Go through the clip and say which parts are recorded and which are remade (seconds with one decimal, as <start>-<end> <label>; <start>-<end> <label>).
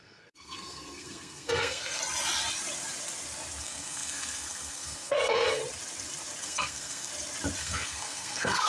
0.0-2.0 remade; 2.0-3.6 recorded; 3.6-5.6 remade; 5.6-6.4 recorded; 6.4-7.1 remade; 7.1-7.6 recorded; 7.6-8.7 remade